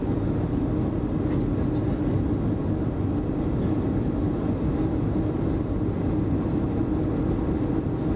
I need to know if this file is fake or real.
real